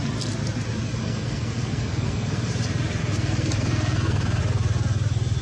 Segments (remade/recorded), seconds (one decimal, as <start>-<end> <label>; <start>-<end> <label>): 0.0-1.0 recorded; 1.0-2.5 remade; 2.5-3.0 recorded; 3.0-4.4 remade; 4.4-5.4 recorded